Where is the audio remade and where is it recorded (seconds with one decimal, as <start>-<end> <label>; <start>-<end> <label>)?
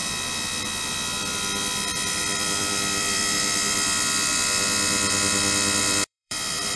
0.0-2.2 recorded; 2.2-4.3 remade; 4.3-5.8 recorded; 5.8-6.8 remade